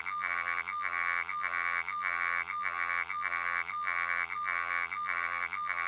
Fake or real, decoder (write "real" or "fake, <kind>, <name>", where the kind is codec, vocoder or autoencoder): fake, vocoder, BigVGAN v2